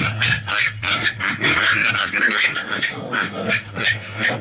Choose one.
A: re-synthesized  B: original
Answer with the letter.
A